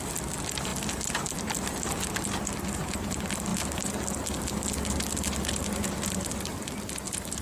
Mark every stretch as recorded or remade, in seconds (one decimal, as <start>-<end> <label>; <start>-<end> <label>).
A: 0.0-0.7 recorded; 0.7-2.0 remade; 2.0-7.4 recorded